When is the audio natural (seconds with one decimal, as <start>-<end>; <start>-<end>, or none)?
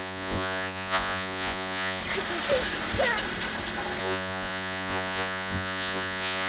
2.0-4.0